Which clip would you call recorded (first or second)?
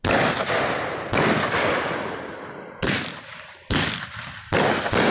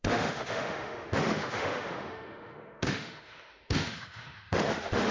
first